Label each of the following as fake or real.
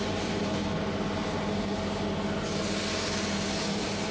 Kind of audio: real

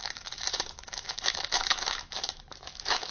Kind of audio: fake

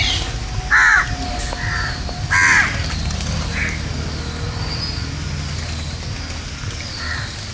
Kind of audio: real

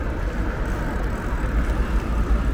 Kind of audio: real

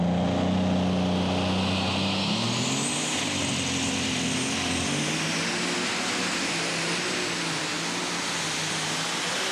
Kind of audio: real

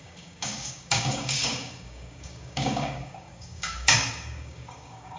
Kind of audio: fake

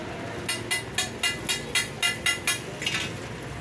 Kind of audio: real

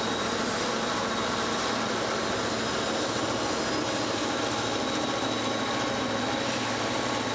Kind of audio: real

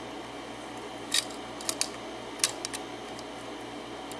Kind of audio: real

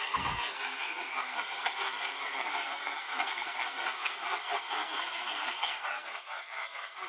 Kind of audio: fake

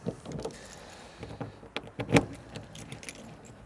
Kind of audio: real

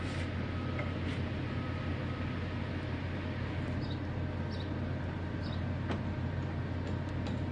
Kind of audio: real